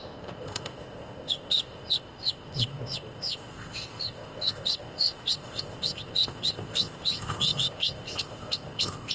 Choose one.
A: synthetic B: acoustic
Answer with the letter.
A